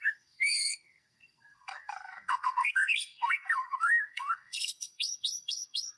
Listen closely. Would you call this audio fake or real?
fake